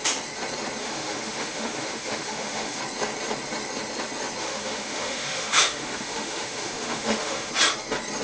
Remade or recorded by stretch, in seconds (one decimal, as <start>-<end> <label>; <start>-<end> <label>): 0.0-0.8 recorded; 0.8-2.8 remade; 2.8-4.4 recorded; 4.4-7.5 remade; 7.5-8.2 recorded